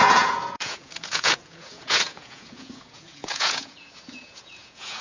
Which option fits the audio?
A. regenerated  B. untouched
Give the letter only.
A